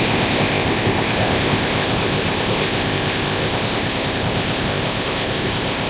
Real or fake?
fake